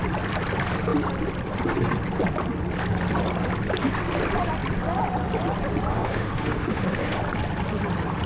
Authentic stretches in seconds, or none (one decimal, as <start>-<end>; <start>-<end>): 0.0-5.9; 7.2-8.3